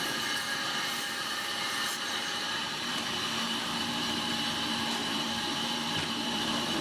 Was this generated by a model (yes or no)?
yes